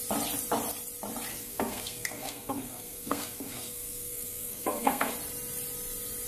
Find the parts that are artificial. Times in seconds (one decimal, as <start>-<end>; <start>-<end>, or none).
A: 1.3-5.1

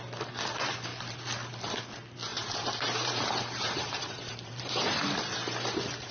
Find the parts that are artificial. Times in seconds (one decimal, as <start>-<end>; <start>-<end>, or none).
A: 2.3-6.1

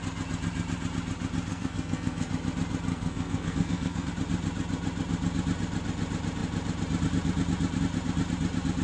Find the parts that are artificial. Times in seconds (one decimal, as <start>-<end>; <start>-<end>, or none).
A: 1.5-2.3; 2.9-4.1

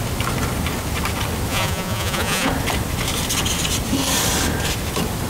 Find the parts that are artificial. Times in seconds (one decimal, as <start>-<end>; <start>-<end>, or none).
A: 1.5-2.5